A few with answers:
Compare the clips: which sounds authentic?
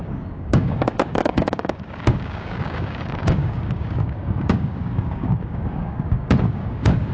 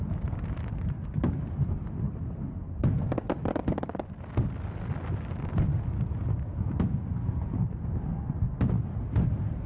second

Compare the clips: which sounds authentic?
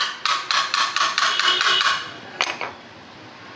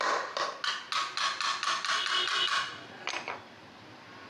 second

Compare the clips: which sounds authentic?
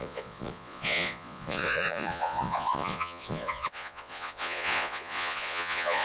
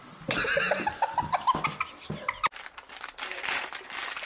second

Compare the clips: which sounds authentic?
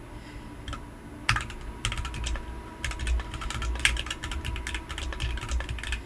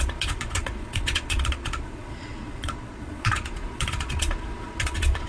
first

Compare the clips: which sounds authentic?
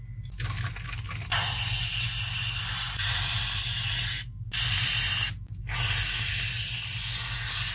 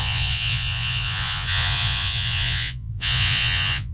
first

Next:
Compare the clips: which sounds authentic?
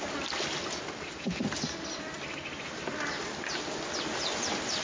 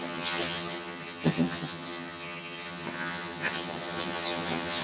first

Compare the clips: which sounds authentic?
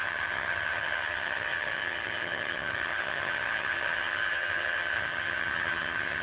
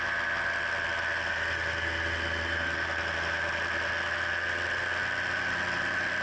second